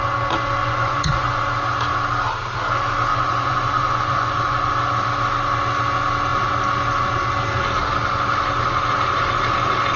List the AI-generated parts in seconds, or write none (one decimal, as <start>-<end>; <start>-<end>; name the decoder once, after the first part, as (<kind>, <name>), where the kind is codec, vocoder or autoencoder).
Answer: 0.6-1.4 (vocoder, Vocos); 3.1-4.7